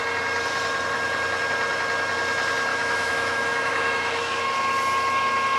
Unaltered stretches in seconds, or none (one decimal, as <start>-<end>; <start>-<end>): 0.0-2.7; 4.4-5.6